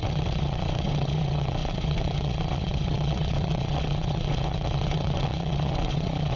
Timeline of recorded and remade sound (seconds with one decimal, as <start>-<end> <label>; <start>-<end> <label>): 0.0-6.4 remade